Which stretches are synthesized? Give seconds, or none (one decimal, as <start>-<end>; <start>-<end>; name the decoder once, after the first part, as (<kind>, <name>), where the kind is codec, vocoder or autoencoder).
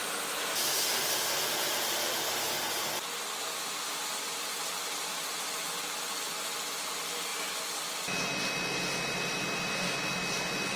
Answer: none